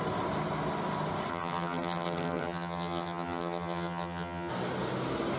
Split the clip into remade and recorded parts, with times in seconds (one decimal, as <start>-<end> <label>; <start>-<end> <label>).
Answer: 0.0-1.3 recorded; 1.3-4.5 remade; 4.5-5.4 recorded